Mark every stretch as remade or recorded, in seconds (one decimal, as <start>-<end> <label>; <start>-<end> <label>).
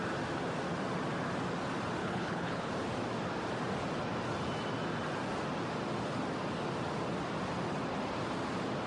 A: 0.0-2.0 recorded; 2.0-2.7 remade; 2.7-8.9 recorded